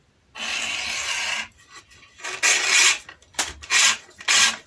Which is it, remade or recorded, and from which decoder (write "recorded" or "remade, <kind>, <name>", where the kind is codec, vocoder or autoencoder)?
recorded